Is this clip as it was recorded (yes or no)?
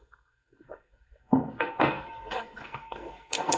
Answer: no